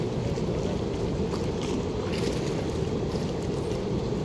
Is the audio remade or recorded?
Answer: recorded